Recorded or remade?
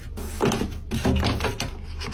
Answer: recorded